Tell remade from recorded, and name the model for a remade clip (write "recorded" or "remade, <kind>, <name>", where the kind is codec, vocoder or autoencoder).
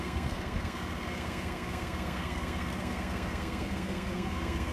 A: remade, codec, SNAC